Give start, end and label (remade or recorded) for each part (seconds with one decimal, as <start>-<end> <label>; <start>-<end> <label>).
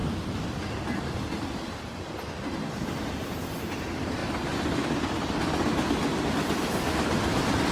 0.0-7.7 recorded